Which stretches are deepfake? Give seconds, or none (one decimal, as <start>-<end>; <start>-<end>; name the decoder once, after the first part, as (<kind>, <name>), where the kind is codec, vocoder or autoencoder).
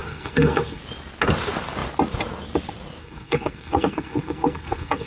0.0-0.8 (codec, SNAC); 3.0-5.1